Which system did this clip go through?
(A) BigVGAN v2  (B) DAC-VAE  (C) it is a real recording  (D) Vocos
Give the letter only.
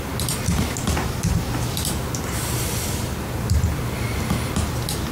C